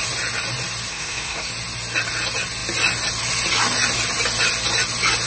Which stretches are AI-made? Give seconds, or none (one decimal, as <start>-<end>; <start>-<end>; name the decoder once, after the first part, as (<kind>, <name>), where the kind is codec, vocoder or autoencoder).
0.9-1.5 (codec, SNAC)